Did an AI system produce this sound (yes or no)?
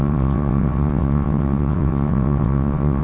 yes